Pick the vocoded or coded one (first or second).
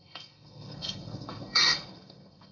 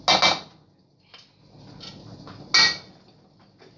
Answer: first